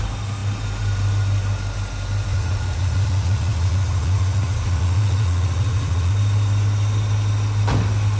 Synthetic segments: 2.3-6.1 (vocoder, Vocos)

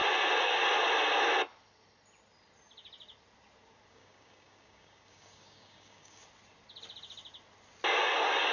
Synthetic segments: 3.9-6.2 (codec, DAC)

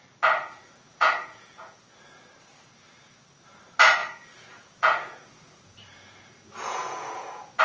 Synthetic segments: 0.6-1.8 (vocoder, Vocos); 4.0-7.6

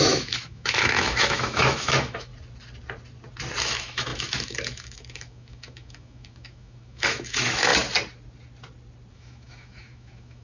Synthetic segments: 0.0-2.3 (autoencoder, DAC-VAE); 3.6-7.7; 9.1-10.4

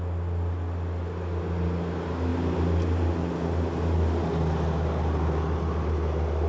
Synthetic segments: none

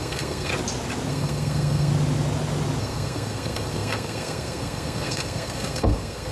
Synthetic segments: 0.0-0.5 (codec, SNAC); 1.1-1.9; 2.8-6.3